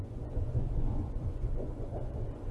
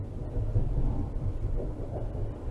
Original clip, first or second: second